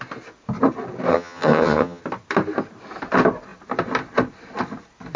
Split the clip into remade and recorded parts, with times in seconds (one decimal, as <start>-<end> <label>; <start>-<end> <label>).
0.0-1.1 recorded; 1.1-2.0 remade; 2.0-5.2 recorded